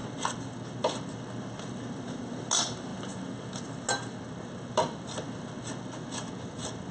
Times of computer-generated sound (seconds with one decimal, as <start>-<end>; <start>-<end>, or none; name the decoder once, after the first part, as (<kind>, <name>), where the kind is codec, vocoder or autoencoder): none